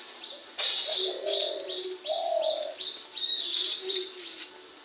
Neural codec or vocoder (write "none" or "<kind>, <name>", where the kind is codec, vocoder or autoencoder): none